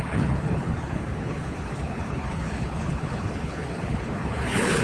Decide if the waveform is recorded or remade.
remade